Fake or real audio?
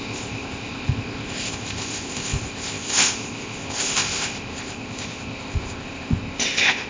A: fake